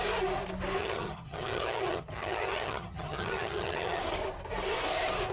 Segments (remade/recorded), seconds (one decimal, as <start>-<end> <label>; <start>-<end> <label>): 0.0-0.8 recorded; 0.8-4.0 remade; 4.0-5.3 recorded

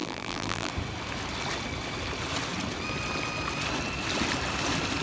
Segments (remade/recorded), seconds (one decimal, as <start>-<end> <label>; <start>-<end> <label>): 0.0-0.7 remade; 0.7-5.0 recorded